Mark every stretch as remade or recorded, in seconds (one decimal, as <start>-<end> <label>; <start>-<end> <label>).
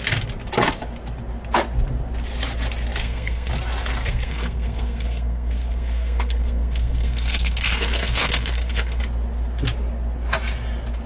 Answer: 0.0-3.0 recorded; 3.0-3.5 remade; 3.5-4.0 recorded; 4.0-9.0 remade; 9.0-11.1 recorded